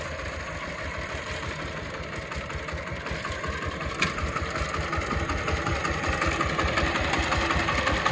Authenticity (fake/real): real